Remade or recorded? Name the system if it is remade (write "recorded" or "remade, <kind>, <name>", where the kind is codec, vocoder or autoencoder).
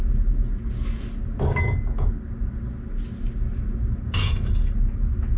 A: recorded